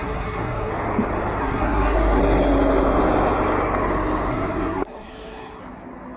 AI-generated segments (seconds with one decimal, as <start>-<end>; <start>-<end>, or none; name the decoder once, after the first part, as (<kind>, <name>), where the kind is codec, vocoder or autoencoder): 0.0-0.7 (codec, SNAC); 1.4-2.2; 4.3-5.6